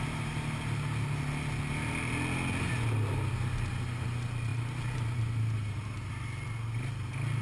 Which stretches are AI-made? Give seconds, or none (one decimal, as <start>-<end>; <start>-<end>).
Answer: 4.5-6.1